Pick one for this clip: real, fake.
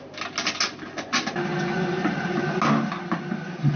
real